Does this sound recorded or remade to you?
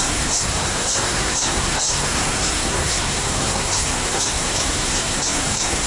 remade